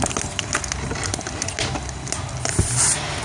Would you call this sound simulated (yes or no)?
no